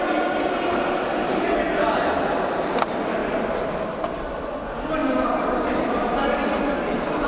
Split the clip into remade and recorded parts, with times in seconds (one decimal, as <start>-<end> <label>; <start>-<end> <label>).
0.0-3.2 remade; 3.2-4.6 recorded; 4.6-7.3 remade

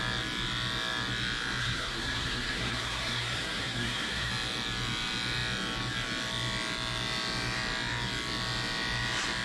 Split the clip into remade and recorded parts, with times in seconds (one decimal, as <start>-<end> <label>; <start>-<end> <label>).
0.0-1.6 recorded; 1.6-4.3 remade; 4.3-9.4 recorded

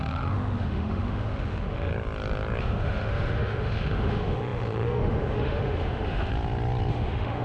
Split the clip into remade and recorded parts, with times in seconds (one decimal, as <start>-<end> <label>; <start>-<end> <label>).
0.0-1.9 remade; 1.9-2.6 recorded; 2.6-6.3 remade; 6.3-6.9 recorded; 6.9-7.4 remade

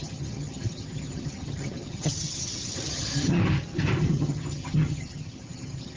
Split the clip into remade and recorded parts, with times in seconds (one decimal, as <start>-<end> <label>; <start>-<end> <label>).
0.0-3.4 remade; 3.4-4.0 recorded; 4.0-6.0 remade

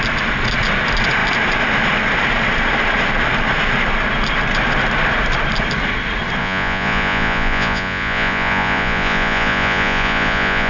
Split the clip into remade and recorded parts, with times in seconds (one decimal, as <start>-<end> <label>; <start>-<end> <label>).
0.0-6.4 recorded; 6.4-10.7 remade

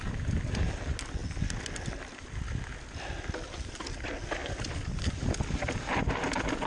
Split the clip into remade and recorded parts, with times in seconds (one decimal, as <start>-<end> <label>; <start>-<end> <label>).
0.0-6.7 recorded

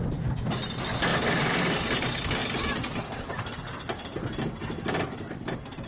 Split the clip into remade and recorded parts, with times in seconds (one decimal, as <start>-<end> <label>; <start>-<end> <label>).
0.0-5.9 recorded